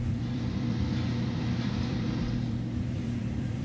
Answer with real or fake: fake